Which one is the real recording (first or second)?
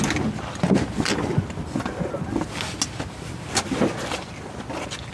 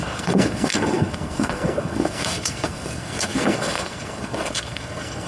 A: first